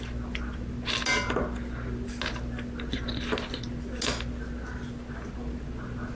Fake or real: real